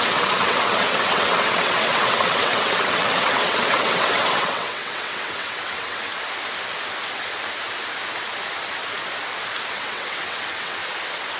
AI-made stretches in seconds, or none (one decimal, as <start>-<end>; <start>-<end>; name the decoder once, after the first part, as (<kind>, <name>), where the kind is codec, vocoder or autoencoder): 0.0-6.1 (vocoder, WaveNeXt); 9.7-10.8